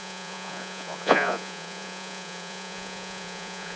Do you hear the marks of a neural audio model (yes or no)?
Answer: yes